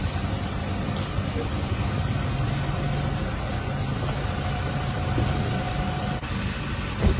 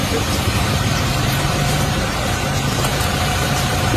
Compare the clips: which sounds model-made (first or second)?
second